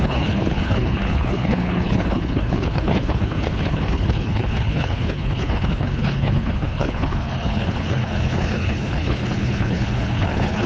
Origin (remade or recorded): remade